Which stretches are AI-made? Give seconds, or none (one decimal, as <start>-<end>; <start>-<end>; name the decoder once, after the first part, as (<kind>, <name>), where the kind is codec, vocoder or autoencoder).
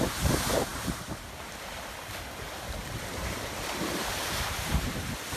none